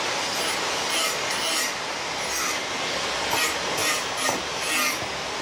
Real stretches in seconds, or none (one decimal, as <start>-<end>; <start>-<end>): 0.0-3.8; 4.7-5.4